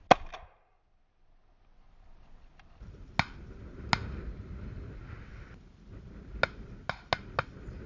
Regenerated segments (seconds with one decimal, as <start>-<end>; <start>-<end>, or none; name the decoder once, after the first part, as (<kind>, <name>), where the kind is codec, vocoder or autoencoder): none